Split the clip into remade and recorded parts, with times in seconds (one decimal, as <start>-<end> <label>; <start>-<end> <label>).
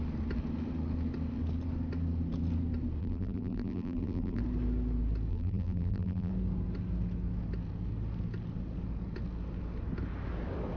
0.0-3.0 recorded; 3.0-4.4 remade; 4.4-5.3 recorded; 5.3-6.3 remade; 6.3-10.8 recorded